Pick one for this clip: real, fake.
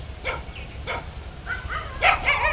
real